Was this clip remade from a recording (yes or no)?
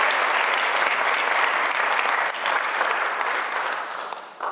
no